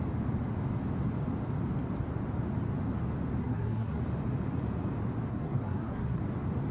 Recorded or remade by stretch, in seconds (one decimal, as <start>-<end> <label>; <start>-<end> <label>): 0.0-3.4 recorded; 3.4-4.0 remade; 4.0-5.3 recorded; 5.3-6.2 remade; 6.2-6.7 recorded